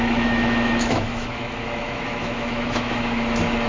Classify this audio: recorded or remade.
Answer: remade